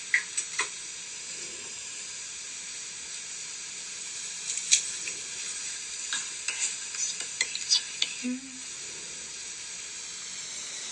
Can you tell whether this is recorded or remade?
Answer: recorded